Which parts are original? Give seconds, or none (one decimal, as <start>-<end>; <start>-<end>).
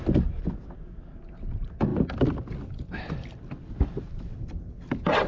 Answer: 0.0-5.3